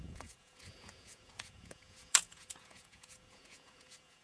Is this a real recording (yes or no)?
no